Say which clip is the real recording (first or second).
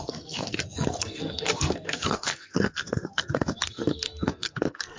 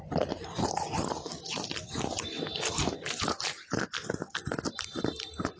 second